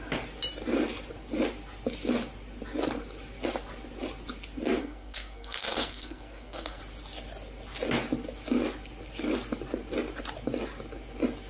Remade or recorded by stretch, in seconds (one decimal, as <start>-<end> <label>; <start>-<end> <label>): 0.0-4.8 recorded; 4.8-6.8 remade; 6.8-11.5 recorded